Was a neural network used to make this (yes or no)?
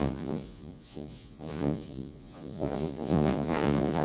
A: yes